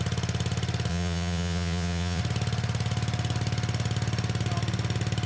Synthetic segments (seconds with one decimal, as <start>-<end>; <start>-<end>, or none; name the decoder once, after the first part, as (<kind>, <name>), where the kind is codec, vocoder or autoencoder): 0.9-2.2 (vocoder, Vocos)

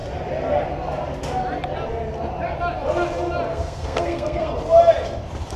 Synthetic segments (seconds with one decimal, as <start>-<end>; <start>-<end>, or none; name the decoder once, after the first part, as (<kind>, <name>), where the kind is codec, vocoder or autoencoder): 3.5-4.5 (codec, SNAC)